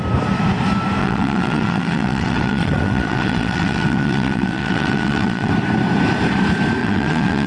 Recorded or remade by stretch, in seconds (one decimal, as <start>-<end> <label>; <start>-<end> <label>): 0.0-1.0 recorded; 1.0-5.5 remade; 5.5-6.8 recorded; 6.8-7.5 remade